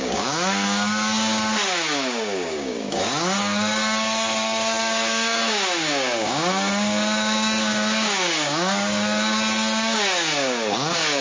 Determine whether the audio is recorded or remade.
remade